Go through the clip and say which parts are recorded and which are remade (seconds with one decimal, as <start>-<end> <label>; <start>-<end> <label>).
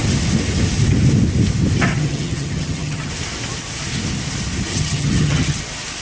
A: 0.0-1.9 recorded; 1.9-3.1 remade; 3.1-4.7 recorded; 4.7-5.6 remade; 5.6-6.0 recorded